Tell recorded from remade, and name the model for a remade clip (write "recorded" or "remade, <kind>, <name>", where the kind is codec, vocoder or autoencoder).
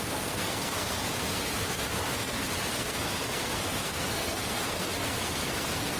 remade, codec, SNAC